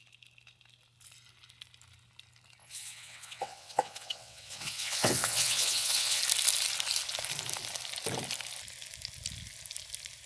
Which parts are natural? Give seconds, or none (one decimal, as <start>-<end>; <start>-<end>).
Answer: 0.0-2.6; 6.2-10.3